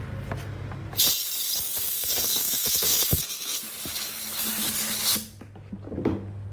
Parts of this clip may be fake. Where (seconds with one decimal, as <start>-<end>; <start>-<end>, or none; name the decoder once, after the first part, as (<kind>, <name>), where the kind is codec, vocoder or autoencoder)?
1.8-3.6 (codec, SNAC)